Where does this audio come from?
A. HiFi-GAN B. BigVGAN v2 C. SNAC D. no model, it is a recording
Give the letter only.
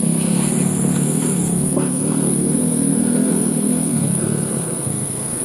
C